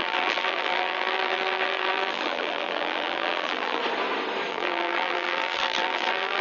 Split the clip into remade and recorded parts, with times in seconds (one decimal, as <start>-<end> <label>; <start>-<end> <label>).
0.0-3.8 remade; 3.8-4.5 recorded; 4.5-6.4 remade